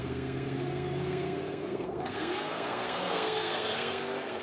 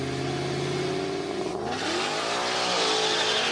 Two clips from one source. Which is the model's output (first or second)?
first